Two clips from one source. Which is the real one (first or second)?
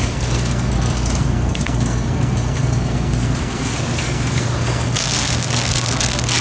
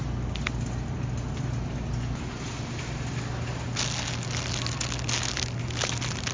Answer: second